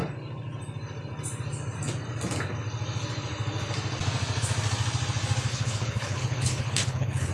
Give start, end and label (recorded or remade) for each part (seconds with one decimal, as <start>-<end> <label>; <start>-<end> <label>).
0.0-5.5 recorded; 5.5-7.3 remade